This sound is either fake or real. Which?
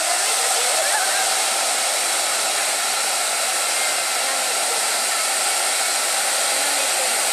real